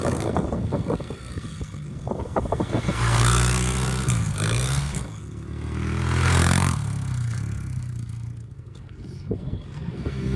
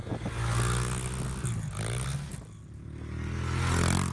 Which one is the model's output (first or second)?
first